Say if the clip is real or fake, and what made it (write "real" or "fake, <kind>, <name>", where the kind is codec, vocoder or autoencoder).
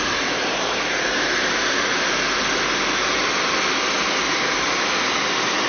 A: real